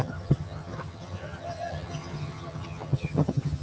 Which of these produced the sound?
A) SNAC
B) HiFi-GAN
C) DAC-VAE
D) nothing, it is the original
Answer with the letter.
B